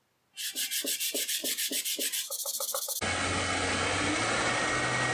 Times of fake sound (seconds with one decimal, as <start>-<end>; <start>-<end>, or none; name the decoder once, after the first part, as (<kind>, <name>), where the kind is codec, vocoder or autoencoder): none